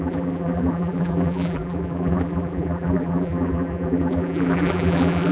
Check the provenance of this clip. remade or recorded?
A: remade